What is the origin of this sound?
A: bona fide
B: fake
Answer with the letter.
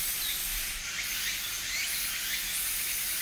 A